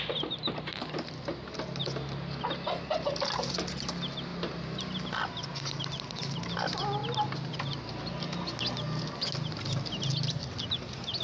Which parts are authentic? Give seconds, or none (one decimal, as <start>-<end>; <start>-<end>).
0.0-11.2